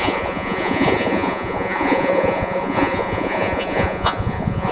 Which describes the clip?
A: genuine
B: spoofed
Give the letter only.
B